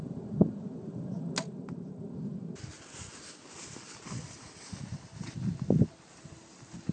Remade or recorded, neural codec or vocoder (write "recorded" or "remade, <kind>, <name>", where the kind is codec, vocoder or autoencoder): recorded